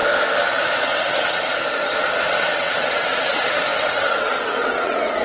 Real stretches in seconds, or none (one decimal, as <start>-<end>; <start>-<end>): 0.0-0.8; 1.5-2.3